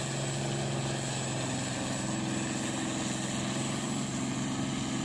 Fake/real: real